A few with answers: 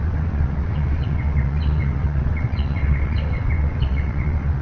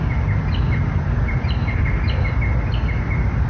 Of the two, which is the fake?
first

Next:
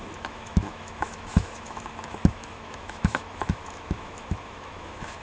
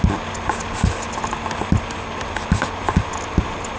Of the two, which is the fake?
first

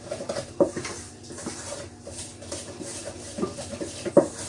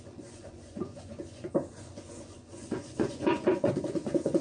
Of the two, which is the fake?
second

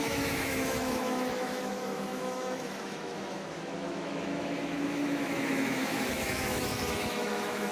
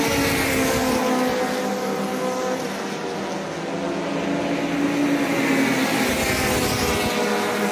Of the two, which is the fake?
first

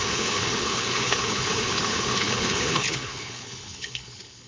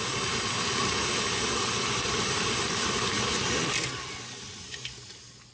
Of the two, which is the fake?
first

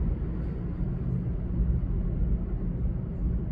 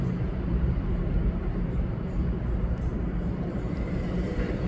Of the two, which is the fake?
second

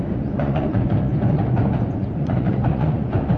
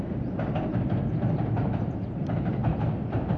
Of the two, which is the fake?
first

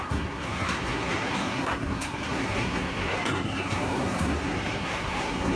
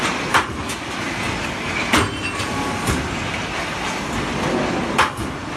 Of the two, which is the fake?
first